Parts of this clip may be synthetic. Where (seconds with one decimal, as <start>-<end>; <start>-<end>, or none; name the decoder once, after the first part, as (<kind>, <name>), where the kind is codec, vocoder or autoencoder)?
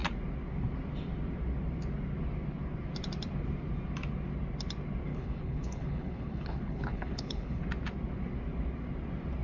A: 5.1-7.6 (codec, HILCodec)